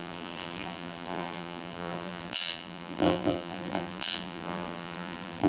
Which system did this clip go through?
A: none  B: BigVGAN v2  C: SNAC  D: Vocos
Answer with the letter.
B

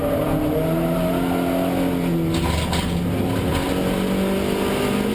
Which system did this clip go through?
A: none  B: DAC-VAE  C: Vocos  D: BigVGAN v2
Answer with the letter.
A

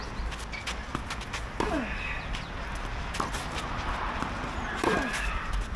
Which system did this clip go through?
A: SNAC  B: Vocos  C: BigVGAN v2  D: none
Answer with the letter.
D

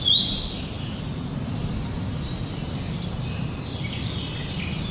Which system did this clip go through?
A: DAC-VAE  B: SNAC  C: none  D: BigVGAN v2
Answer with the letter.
C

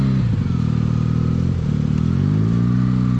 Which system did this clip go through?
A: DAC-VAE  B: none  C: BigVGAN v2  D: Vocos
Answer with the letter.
B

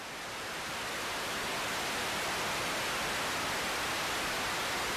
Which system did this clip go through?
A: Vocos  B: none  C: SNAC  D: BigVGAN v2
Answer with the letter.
B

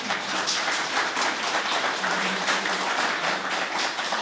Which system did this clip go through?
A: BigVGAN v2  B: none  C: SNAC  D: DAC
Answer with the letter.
A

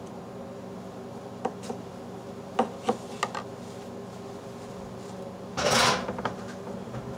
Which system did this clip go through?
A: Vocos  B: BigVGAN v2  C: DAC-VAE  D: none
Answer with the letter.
D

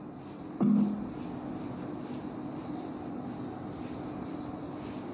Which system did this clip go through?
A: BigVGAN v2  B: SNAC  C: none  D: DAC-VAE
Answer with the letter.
C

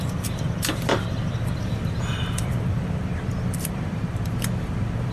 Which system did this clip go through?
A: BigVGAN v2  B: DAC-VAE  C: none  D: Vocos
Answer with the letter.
A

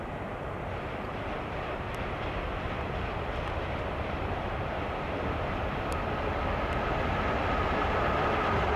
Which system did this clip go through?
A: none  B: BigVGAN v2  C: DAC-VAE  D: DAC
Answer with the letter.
A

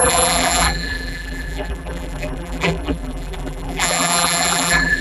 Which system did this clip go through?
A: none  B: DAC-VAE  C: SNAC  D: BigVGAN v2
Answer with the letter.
D